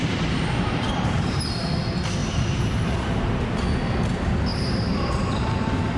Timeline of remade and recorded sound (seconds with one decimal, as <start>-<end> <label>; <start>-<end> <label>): 0.0-1.4 remade; 1.4-2.2 recorded; 2.2-3.2 remade; 3.2-4.5 recorded; 4.5-6.0 remade